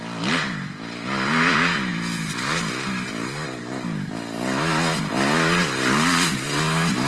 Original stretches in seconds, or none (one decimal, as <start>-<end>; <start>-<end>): 0.0-7.1